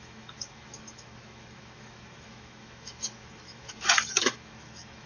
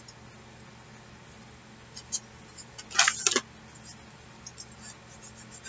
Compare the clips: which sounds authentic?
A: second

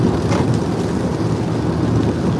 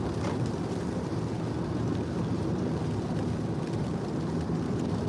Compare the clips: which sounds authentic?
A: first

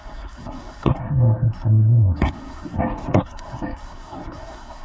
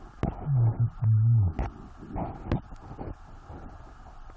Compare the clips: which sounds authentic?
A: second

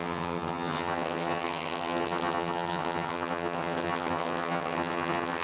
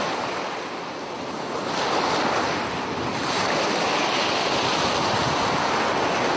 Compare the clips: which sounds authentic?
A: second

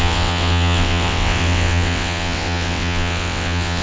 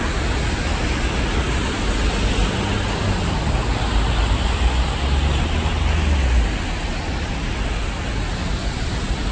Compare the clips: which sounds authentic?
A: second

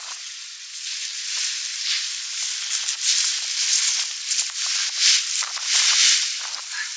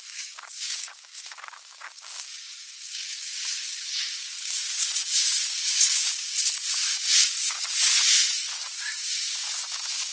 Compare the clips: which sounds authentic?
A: first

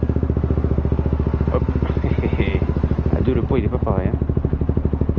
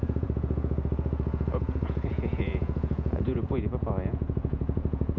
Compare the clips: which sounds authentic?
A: first